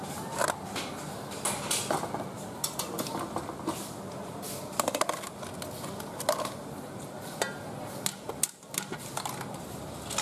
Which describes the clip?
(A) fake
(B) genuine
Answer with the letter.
B